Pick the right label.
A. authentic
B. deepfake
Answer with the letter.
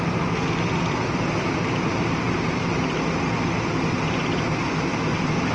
A